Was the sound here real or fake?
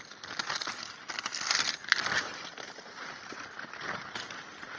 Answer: real